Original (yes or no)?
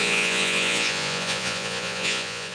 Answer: no